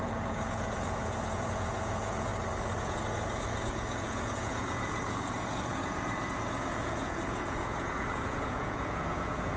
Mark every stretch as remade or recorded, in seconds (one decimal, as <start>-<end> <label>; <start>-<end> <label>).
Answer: 0.0-2.3 remade; 2.3-2.8 recorded; 2.8-9.6 remade